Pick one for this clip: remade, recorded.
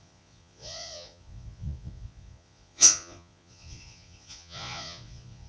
remade